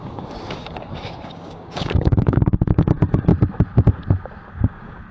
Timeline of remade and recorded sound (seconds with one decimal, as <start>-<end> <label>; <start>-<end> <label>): 0.0-3.3 remade; 3.3-4.5 recorded; 4.5-5.1 remade